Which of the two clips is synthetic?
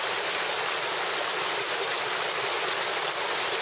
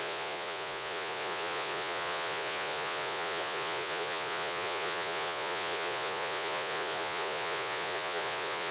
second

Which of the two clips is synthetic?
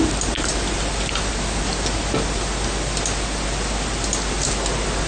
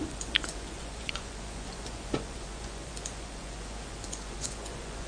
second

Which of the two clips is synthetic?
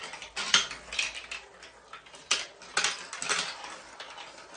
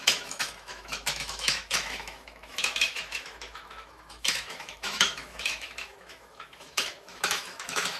second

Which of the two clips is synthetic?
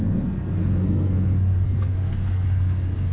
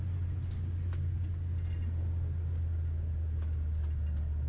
first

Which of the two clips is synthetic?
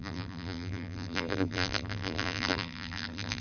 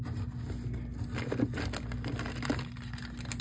first